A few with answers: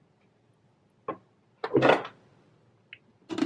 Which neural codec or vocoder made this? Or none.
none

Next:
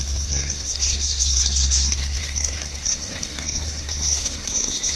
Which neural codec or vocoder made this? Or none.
codec, SNAC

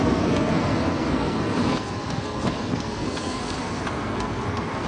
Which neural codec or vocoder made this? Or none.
codec, SNAC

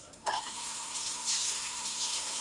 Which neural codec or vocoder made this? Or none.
codec, SNAC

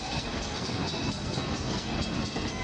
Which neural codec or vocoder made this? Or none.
codec, SNAC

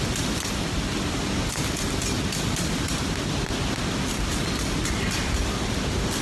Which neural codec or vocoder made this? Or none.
none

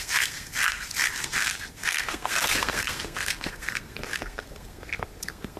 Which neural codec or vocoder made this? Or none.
codec, SNAC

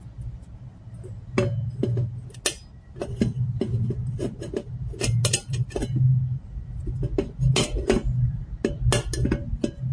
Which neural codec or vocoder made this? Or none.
none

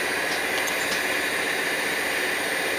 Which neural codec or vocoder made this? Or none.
none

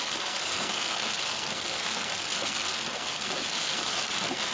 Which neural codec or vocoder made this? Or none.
codec, SNAC